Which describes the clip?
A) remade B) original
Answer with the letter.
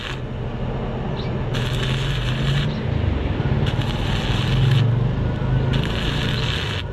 B